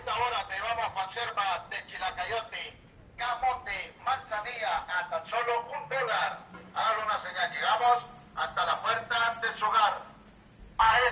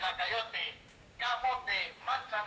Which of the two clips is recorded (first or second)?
first